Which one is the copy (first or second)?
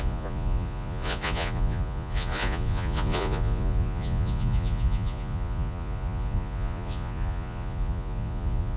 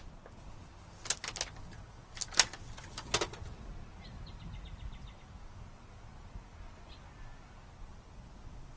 first